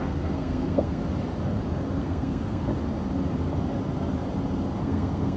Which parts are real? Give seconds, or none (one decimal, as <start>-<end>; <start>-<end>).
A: 1.0-2.0; 2.7-4.8